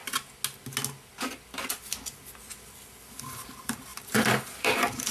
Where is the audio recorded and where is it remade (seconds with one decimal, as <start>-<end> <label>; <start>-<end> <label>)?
0.0-3.1 recorded; 3.1-5.1 remade